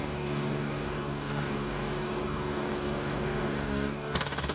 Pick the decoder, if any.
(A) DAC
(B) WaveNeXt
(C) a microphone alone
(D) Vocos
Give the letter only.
A